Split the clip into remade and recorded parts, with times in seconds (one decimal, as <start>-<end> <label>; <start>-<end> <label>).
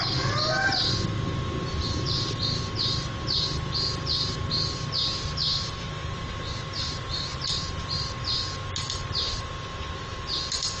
0.0-5.5 recorded; 5.5-7.7 remade; 7.7-9.7 recorded; 9.7-10.2 remade; 10.2-10.8 recorded